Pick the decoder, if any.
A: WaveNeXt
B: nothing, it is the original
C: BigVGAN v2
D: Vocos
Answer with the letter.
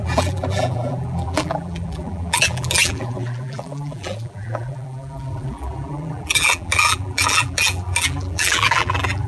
C